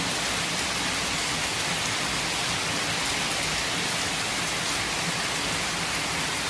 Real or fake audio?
real